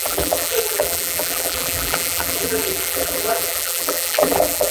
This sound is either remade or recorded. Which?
remade